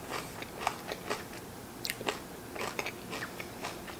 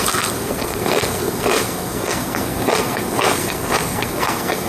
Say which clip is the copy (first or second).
second